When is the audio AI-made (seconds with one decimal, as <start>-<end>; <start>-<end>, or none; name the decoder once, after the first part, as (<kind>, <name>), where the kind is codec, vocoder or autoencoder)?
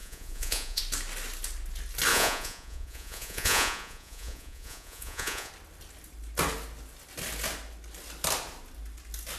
0.0-0.8 (vocoder, Vocos); 2.1-5.5